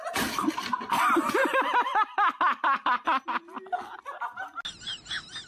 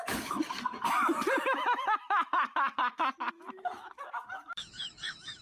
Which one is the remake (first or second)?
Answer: second